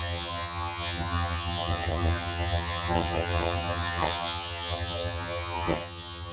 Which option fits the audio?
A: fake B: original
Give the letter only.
A